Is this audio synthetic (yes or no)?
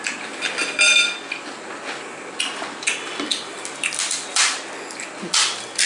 no